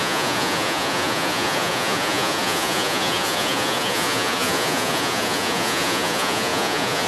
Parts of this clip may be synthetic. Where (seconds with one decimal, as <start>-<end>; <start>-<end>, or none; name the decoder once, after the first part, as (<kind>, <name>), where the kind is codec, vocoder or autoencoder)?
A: 0.0-7.1 (vocoder, Vocos)